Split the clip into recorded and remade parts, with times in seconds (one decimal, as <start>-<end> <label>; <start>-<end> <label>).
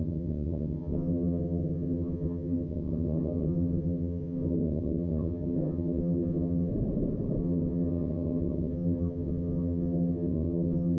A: 0.0-6.7 remade; 6.7-7.4 recorded; 7.4-11.0 remade